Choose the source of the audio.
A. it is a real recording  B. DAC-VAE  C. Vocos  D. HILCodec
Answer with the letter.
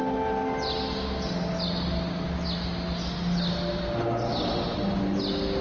A